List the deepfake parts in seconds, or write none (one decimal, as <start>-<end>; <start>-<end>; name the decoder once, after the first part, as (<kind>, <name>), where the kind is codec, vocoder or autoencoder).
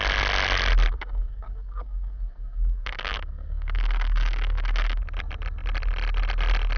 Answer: 0.9-5.0 (codec, SNAC)